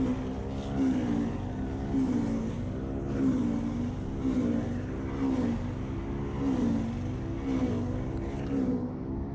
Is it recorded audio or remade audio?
recorded